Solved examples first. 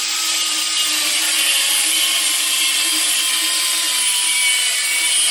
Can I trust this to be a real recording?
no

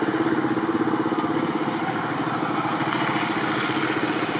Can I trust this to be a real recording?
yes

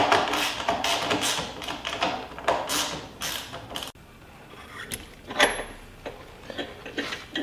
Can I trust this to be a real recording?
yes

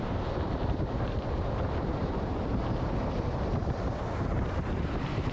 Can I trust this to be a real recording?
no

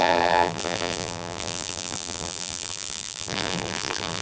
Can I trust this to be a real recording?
no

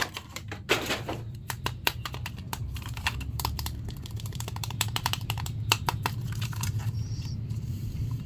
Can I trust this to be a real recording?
no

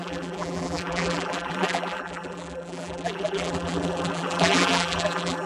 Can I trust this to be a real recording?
no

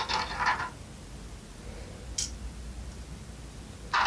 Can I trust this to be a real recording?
yes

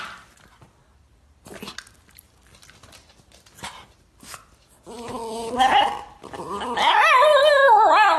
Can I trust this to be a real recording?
yes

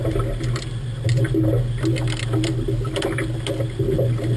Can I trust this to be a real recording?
yes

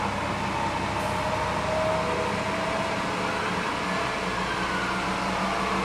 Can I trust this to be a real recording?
yes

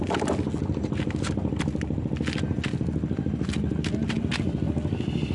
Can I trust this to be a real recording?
yes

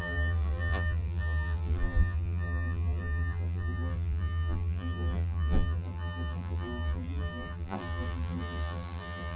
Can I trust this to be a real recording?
no